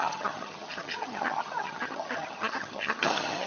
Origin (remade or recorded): remade